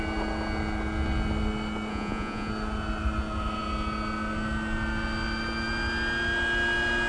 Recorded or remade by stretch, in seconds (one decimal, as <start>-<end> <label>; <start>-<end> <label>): 0.0-1.9 recorded; 1.9-2.5 remade; 2.5-7.1 recorded